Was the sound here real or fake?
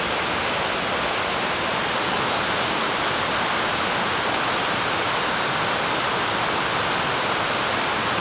real